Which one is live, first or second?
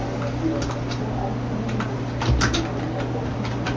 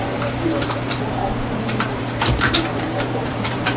first